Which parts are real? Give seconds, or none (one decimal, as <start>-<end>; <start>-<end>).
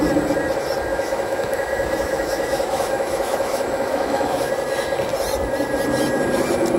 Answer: 0.0-0.9; 4.5-6.8